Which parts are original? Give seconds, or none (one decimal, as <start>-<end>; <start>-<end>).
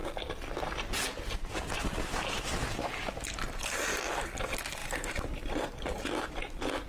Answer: 0.0-4.8; 6.0-6.9